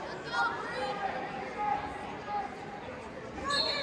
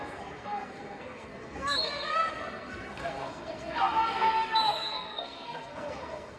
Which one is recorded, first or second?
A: first